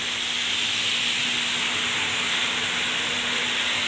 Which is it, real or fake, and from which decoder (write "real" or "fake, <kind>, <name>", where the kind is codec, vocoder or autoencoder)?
real